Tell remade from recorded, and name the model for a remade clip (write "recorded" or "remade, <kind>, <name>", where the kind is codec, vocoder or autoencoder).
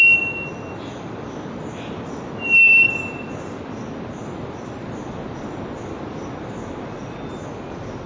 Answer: recorded